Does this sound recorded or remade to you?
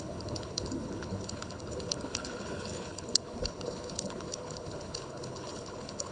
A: remade